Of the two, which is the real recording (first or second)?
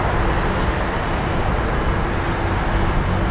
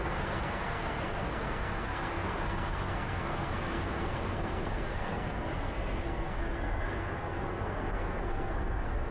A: first